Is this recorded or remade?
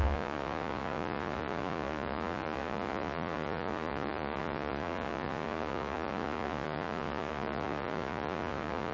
remade